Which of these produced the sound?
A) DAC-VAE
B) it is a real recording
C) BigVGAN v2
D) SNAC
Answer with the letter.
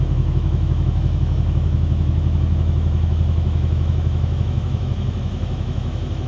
A